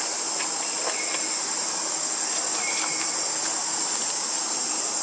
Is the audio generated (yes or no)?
no